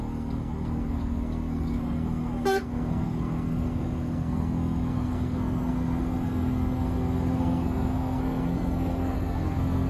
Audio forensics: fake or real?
fake